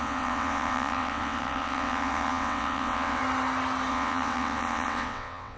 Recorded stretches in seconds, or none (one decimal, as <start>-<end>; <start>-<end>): 3.2-3.9